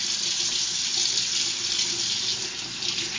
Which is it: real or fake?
real